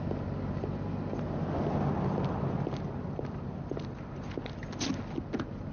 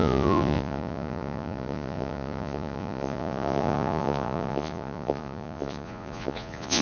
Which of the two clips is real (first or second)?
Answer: first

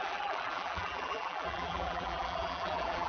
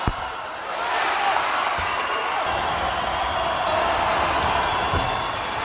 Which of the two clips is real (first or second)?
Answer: second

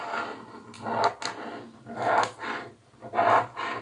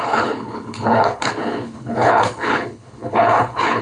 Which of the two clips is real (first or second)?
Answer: first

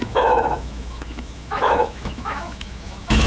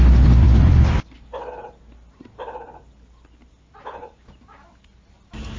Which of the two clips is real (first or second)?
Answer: second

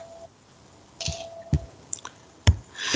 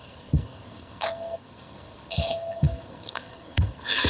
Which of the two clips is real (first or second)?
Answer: first